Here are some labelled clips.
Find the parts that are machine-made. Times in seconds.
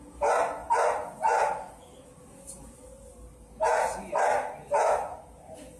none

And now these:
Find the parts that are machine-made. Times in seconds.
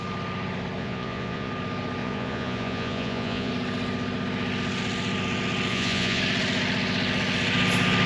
0.8-1.5 (vocoder, Vocos); 2.0-3.5; 5.7-6.2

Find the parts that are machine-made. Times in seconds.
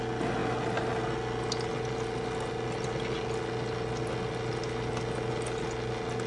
none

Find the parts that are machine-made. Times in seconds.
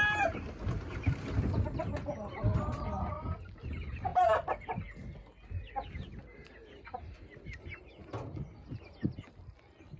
none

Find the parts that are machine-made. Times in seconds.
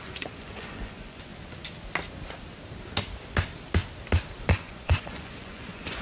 0.0-1.3 (vocoder, Vocos); 4.5-6.0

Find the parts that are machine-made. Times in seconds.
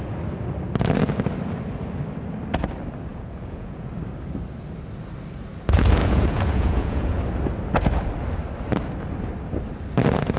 3.1-3.9 (vocoder, Vocos); 6.0-7.2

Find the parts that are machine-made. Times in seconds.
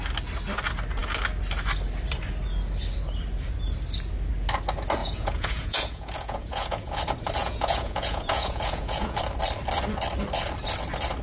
5.0-7.0 (vocoder, Vocos); 7.4-9.2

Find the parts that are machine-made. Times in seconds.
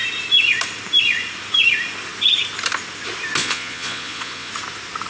3.4-4.5 (vocoder, Vocos)